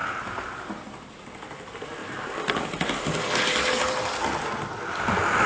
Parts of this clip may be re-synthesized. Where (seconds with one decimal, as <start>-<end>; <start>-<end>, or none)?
none